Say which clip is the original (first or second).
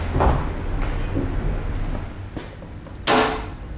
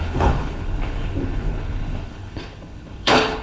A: first